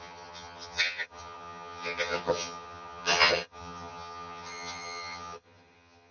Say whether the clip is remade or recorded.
remade